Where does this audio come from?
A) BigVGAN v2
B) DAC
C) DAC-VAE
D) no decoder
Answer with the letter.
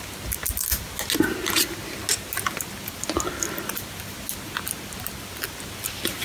D